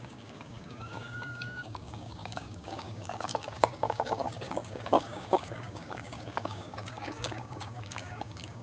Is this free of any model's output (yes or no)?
no